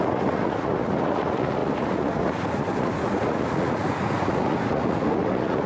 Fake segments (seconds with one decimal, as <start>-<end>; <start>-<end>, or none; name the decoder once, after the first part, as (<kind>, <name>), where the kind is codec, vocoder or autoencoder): 0.0-5.7 (vocoder, Vocos)